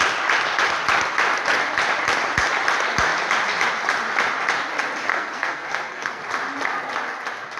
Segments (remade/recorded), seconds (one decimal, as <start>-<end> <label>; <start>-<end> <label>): 0.0-5.1 recorded; 5.1-6.2 remade; 6.2-7.6 recorded